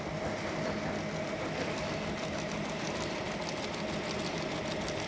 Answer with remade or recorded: recorded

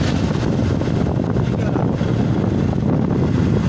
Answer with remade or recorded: recorded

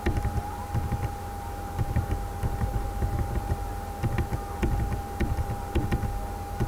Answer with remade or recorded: recorded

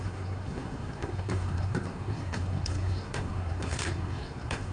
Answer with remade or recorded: remade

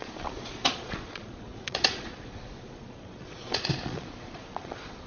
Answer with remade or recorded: remade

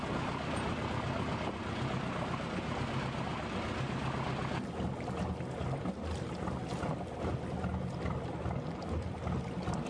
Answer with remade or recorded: recorded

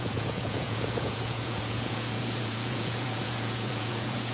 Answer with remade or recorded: remade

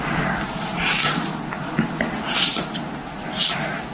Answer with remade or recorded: recorded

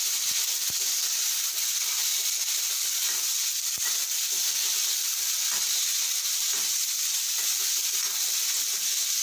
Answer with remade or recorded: recorded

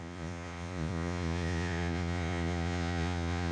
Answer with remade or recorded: remade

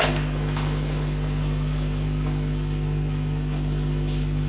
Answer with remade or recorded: remade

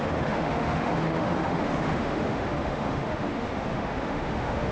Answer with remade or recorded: remade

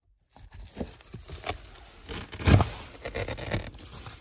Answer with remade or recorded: recorded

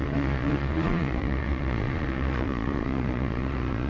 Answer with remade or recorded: remade